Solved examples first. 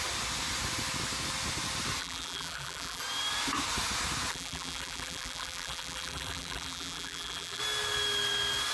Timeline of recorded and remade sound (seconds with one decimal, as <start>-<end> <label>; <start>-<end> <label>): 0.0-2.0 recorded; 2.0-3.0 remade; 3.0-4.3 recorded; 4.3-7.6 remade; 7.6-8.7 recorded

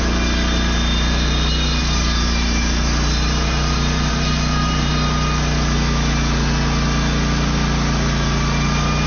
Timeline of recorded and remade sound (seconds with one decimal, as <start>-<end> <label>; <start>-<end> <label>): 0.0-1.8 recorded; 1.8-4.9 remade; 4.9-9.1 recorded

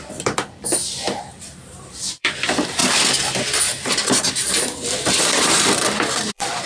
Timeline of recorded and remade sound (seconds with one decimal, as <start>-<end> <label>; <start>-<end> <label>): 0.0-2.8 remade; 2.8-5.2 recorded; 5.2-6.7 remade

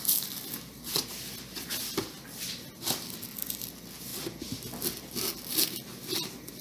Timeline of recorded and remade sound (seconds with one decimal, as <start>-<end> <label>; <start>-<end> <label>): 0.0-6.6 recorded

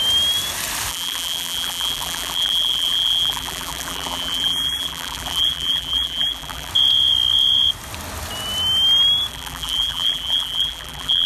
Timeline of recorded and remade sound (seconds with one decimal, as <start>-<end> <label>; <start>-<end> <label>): 0.0-0.9 recorded; 0.9-6.7 remade; 6.7-9.3 recorded; 9.3-11.3 remade

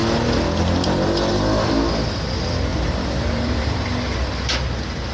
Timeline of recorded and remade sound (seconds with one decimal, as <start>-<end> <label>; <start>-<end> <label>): 0.0-2.7 recorded; 2.7-3.8 remade; 3.8-5.1 recorded